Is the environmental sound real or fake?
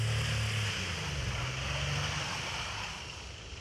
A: real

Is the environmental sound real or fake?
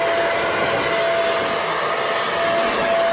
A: real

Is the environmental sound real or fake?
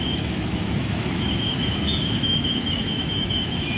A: fake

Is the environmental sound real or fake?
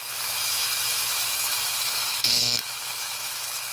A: fake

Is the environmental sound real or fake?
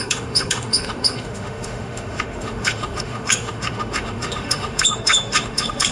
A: fake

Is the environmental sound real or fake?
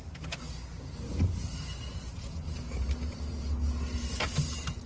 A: real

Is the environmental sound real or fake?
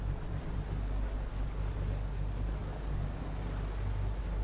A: real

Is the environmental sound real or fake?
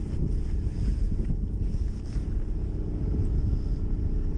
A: real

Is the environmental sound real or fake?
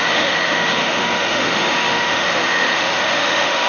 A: fake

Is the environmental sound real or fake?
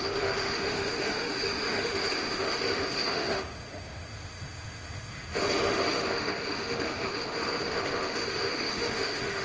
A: fake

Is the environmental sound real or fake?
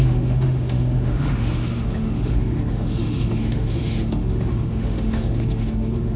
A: fake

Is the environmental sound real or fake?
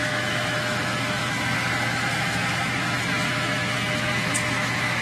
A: fake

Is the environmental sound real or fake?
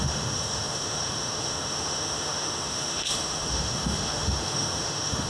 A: fake